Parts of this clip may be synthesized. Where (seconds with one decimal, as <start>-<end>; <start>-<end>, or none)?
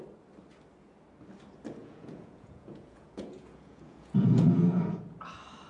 1.8-5.2